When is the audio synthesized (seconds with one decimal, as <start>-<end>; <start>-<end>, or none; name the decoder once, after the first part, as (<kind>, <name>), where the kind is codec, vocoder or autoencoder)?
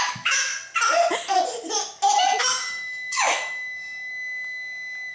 0.0-0.5 (autoencoder, DAC-VAE); 2.4-4.1